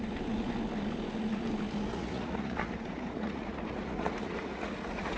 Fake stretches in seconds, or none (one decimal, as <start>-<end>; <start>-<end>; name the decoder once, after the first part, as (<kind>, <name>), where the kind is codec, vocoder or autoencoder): 1.9-5.2 (vocoder, Vocos)